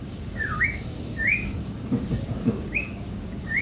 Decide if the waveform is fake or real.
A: fake